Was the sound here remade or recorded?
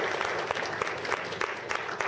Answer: recorded